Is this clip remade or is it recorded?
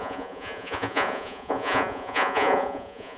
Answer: remade